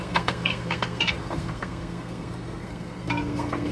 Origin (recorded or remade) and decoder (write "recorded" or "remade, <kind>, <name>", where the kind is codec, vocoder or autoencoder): remade, codec, SNAC